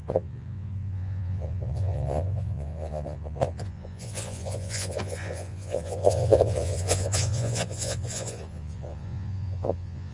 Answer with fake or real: fake